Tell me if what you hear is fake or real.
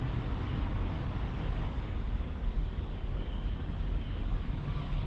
fake